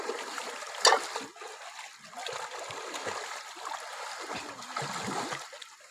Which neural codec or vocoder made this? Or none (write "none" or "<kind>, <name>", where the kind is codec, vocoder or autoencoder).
none